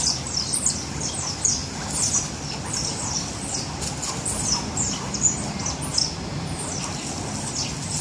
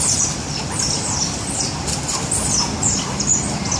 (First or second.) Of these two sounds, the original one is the first